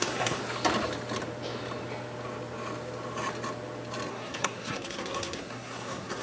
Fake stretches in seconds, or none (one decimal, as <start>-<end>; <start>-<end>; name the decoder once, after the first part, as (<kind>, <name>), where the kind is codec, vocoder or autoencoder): 0.0-0.4 (codec, SNAC); 4.1-6.2

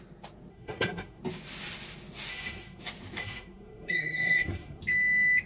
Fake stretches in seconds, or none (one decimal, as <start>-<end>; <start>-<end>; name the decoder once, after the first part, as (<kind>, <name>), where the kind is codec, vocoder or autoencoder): 0.5-1.2 (codec, SNAC); 2.3-2.8; 3.2-4.8

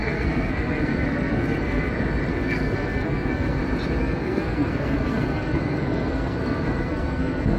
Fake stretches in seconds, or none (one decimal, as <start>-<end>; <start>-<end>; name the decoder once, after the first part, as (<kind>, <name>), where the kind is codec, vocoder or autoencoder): 0.0-1.9 (codec, SNAC); 2.3-3.6; 4.0-7.6

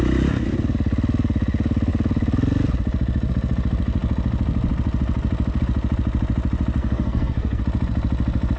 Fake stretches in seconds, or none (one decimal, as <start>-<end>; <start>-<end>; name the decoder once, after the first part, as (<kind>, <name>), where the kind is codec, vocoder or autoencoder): 6.8-7.6 (codec, SNAC)

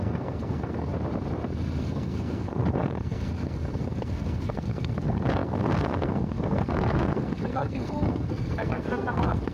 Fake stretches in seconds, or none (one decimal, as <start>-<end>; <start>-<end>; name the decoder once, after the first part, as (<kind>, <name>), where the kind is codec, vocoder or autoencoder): 0.0-0.9 (codec, SNAC); 1.8-9.5

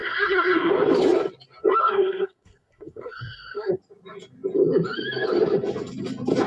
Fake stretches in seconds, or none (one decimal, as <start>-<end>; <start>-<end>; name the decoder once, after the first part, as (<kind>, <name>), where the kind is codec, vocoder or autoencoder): 0.0-0.7 (codec, SNAC); 1.8-3.8

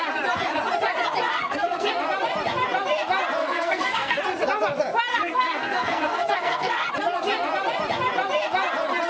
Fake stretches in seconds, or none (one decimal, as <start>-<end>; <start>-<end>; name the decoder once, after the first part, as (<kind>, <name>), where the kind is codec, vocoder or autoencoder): 1.3-1.9 (codec, SNAC); 3.4-4.2; 5.1-6.9

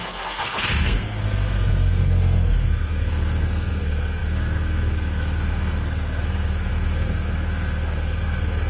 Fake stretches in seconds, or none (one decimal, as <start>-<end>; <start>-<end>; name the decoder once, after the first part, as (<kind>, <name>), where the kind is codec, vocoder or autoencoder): 0.0-8.7 (codec, SNAC)